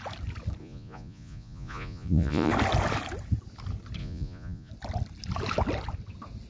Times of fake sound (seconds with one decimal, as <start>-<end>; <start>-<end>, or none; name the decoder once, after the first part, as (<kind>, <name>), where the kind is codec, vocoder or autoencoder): 0.6-2.5 (vocoder, Vocos); 4.0-4.7